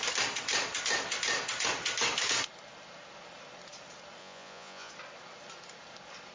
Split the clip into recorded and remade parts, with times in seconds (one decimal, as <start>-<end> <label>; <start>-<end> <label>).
0.0-4.2 recorded; 4.2-4.9 remade; 4.9-6.3 recorded